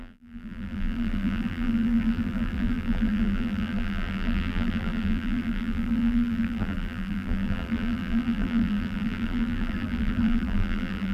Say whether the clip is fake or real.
fake